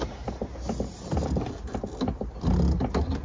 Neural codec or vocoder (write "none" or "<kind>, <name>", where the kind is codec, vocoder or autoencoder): none